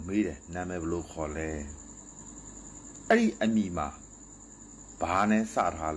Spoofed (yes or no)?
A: no